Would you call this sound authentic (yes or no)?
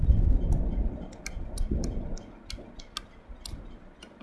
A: yes